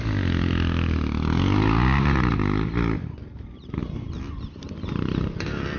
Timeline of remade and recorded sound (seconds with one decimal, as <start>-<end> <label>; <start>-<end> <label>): 0.0-5.8 recorded